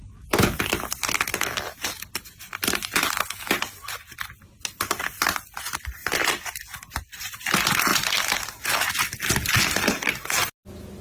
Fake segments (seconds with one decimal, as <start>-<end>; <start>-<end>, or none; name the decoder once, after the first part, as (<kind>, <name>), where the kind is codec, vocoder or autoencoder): 6.0-7.5 (vocoder, BigVGAN v2)